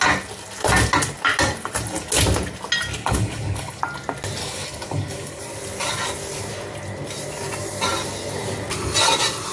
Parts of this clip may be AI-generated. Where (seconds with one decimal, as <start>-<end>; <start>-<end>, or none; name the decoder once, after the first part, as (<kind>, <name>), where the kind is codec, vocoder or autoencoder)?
3.0-3.8 (codec, HILCodec); 4.4-5.4